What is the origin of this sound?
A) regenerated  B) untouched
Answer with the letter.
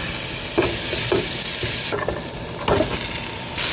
B